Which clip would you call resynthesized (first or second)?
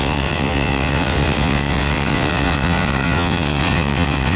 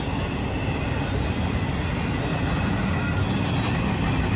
first